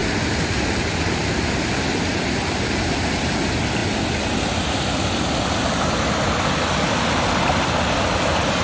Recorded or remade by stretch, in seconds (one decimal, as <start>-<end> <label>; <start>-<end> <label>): 0.0-8.6 recorded